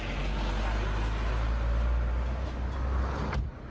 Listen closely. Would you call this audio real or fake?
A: real